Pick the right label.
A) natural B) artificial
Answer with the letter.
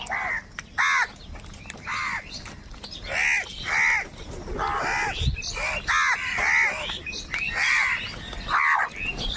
A